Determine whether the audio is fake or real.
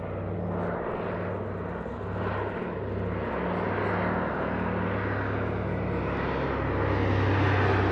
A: real